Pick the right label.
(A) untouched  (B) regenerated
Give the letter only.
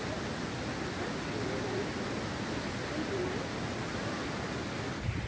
A